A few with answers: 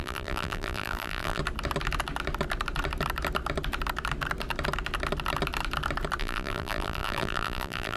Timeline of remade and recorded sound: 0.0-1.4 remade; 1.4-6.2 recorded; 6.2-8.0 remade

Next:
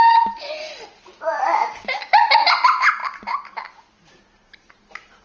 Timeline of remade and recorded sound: 0.0-0.4 remade; 0.4-1.7 recorded; 1.7-5.2 remade

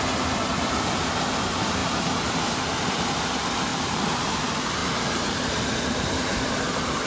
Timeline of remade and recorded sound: 0.0-3.7 recorded; 3.7-4.3 remade; 4.3-4.8 recorded; 4.8-7.1 remade

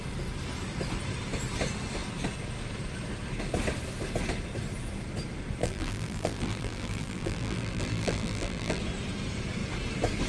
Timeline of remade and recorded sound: 0.0-5.6 recorded; 5.6-8.8 remade; 8.8-10.3 recorded